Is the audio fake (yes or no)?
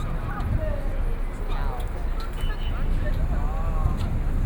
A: no